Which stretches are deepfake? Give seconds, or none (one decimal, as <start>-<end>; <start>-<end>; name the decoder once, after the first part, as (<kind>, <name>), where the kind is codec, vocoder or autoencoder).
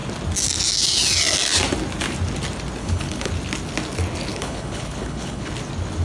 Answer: 2.8-3.3 (codec, HILCodec); 4.3-5.5